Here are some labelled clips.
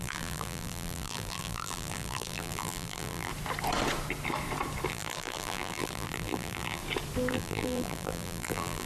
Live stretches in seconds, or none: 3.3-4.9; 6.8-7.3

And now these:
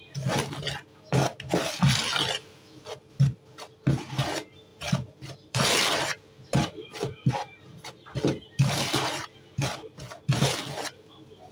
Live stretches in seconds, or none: 0.0-4.7; 7.3-7.7; 9.4-11.5

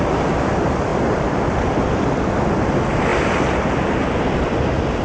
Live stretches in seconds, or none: 0.0-5.0

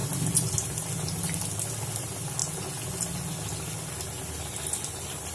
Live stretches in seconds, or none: 0.0-5.3

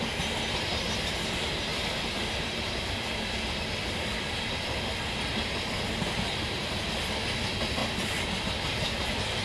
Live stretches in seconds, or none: 0.0-1.7; 5.7-9.4

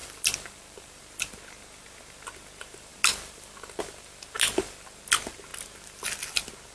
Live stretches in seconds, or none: 1.0-2.9; 3.8-6.7

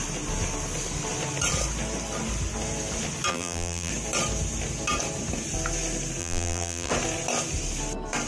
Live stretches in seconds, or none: 0.0-3.3; 3.9-6.2; 6.9-8.3